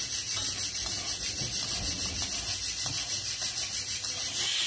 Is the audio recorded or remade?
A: recorded